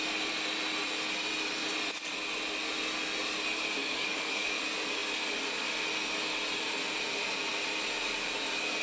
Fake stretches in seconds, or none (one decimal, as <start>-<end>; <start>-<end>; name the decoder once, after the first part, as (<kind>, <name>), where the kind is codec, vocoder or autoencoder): 3.8-4.6 (codec, DAC)